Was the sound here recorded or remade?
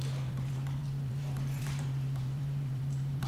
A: remade